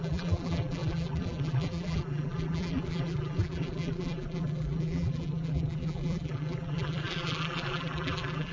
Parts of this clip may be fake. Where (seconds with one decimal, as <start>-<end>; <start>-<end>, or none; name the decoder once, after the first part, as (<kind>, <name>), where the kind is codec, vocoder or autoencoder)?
0.0-8.5 (vocoder, BigVGAN v2)